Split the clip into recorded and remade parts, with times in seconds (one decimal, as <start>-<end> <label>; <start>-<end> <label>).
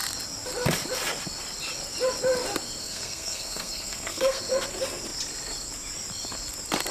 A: 0.0-2.8 recorded; 2.8-4.4 remade; 4.4-6.9 recorded